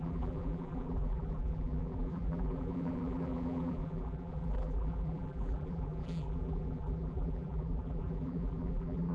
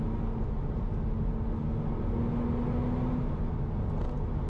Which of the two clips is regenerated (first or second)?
first